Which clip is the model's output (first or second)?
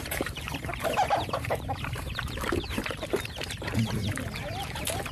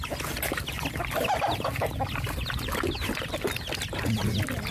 first